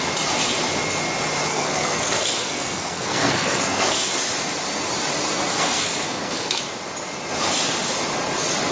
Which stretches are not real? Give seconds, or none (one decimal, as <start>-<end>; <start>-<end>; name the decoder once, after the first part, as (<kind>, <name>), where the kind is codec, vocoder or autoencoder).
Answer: 1.5-4.2 (codec, SNAC); 5.5-6.6